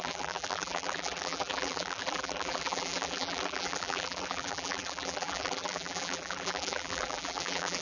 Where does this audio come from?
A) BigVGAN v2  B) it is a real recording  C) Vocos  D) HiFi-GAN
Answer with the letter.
A